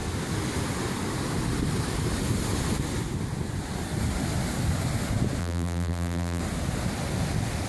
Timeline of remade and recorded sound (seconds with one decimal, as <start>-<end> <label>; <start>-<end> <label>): 0.0-5.4 recorded; 5.4-6.4 remade; 6.4-7.7 recorded